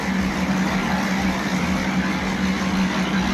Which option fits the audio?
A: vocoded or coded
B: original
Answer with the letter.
B